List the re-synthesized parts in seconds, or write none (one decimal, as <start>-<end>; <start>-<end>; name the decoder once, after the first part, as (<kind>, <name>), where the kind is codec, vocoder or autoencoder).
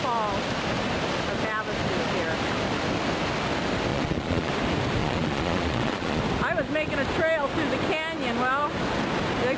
3.9-4.5 (vocoder, Vocos); 5.0-6.2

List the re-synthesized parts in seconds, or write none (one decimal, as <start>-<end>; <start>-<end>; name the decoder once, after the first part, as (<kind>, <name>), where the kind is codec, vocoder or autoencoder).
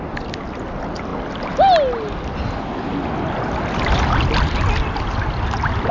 none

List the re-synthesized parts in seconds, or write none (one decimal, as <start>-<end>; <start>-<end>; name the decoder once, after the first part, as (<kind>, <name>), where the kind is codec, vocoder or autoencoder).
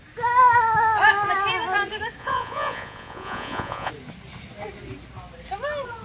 2.2-3.9 (vocoder, Vocos)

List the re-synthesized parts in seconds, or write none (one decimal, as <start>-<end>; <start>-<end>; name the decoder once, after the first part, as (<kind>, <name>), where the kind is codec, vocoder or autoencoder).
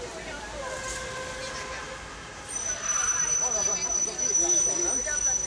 none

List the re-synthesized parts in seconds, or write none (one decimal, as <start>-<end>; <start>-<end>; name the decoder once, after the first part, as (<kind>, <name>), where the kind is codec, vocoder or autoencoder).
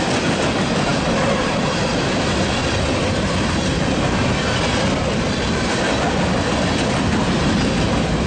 none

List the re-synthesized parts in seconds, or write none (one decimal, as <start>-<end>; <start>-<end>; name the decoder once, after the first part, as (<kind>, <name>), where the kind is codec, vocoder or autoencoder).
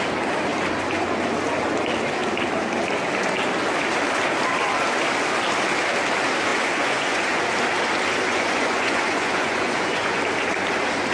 6.5-7.4 (vocoder, Vocos); 8.3-10.2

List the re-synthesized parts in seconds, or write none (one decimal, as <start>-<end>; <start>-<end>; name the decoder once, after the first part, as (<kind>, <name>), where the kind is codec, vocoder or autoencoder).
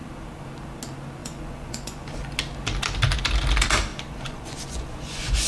1.2-2.3 (vocoder, Vocos); 3.9-5.5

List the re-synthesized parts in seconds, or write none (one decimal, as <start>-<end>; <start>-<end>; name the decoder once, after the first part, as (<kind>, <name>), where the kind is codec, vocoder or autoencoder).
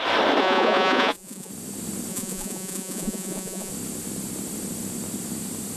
0.4-1.5 (vocoder, Vocos); 2.1-3.7